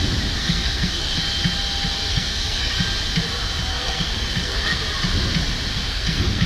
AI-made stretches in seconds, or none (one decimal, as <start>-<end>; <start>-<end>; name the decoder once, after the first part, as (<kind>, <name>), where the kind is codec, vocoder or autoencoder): 0.4-1.2 (codec, SNAC); 2.1-2.8; 3.7-4.8; 5.7-6.5